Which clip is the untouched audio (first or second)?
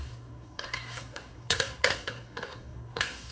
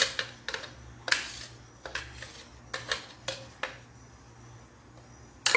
second